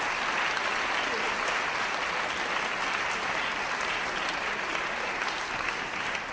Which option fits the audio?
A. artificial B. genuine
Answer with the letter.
B